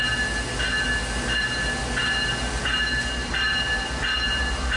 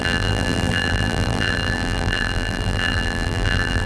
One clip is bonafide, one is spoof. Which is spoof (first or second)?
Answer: second